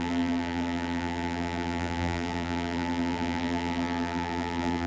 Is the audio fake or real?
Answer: fake